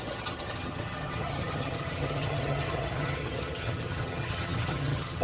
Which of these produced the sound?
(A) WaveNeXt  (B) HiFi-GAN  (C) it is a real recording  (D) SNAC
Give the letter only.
B